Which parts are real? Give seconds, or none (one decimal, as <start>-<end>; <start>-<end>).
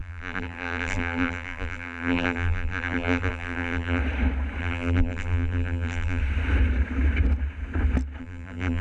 4.0-4.6; 6.2-8.2